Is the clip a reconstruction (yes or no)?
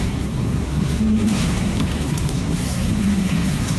yes